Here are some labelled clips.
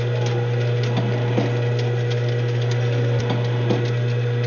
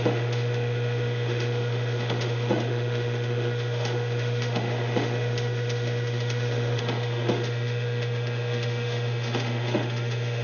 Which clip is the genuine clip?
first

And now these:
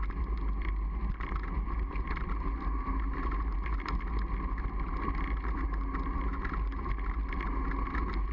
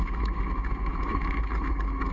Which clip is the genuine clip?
first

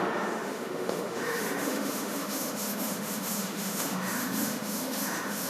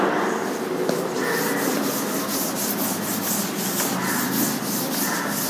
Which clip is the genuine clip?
second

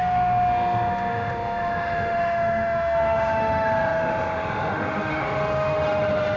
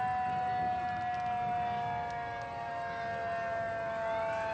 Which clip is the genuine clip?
second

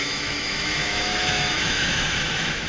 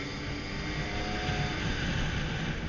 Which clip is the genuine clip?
second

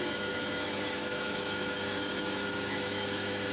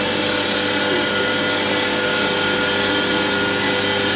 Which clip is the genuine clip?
second